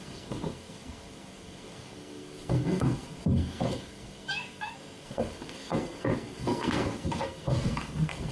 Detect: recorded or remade remade